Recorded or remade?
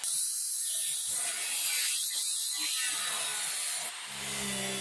recorded